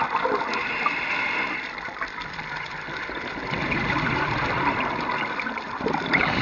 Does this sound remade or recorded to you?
remade